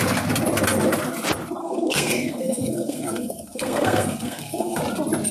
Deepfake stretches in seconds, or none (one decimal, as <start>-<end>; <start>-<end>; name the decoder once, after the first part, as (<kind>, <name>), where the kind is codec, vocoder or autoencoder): 1.6-4.8 (codec, SNAC)